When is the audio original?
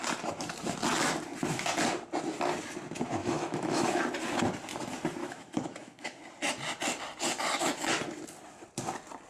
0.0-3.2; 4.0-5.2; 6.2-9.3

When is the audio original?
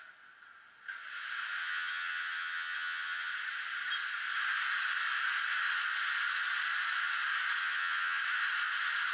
0.0-1.6; 3.3-7.6; 8.2-9.1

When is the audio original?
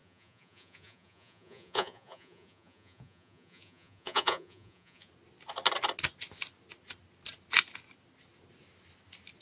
5.1-9.4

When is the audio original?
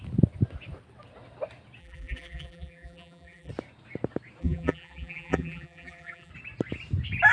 0.0-1.8; 3.5-4.4; 6.3-7.3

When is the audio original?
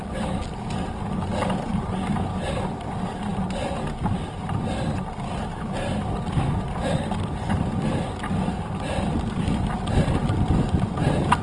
0.0-11.4